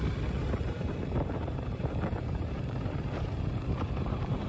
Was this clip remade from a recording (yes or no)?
yes